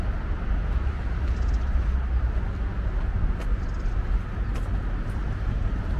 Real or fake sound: real